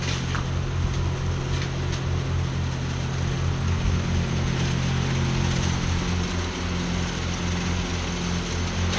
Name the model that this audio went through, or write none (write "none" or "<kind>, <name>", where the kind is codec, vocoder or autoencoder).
none